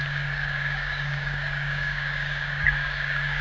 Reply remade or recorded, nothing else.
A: remade